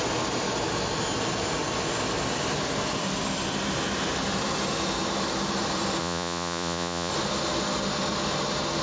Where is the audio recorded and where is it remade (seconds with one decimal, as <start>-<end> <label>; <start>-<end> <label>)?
0.0-6.0 recorded; 6.0-7.1 remade; 7.1-8.8 recorded